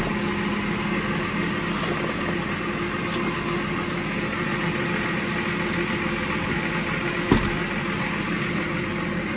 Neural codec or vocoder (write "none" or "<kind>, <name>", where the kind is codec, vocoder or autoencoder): none